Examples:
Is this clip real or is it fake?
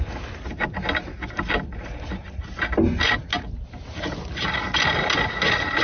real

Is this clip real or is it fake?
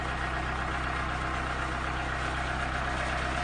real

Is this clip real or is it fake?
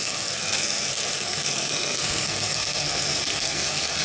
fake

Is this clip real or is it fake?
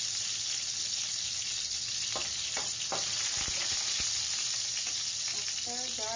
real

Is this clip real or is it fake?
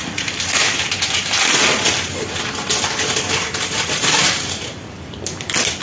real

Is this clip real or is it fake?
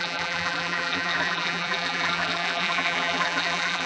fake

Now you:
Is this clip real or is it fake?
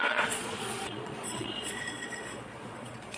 fake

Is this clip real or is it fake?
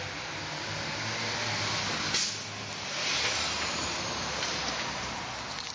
real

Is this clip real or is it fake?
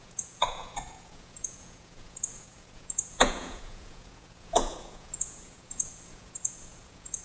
fake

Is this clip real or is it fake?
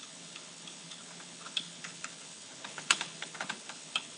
fake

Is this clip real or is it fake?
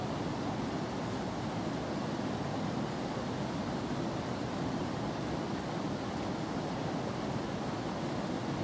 real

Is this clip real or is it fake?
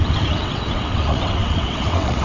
fake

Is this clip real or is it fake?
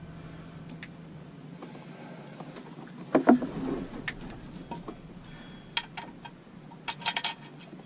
real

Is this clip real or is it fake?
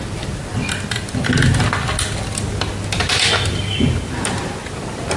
real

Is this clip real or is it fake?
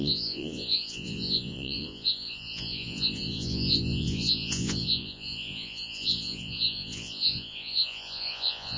fake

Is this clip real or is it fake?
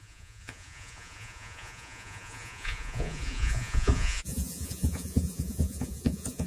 fake